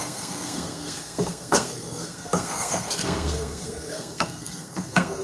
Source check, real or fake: fake